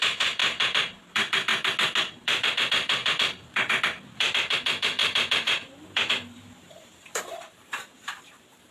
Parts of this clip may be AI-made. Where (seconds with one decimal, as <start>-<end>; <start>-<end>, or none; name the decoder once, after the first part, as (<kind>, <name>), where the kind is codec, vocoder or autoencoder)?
0.0-1.5 (vocoder, BigVGAN v2); 2.1-8.7